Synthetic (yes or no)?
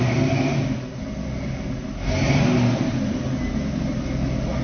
no